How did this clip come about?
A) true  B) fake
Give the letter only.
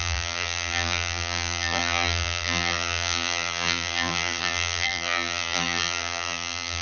B